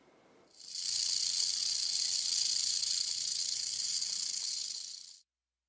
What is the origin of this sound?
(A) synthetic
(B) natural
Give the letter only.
B